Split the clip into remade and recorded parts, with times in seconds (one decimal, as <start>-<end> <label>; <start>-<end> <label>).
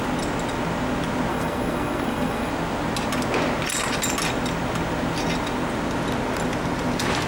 0.0-1.3 recorded; 1.3-2.5 remade; 2.5-7.3 recorded